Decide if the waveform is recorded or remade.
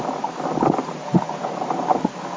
recorded